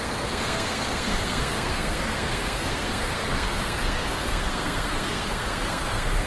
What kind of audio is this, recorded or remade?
remade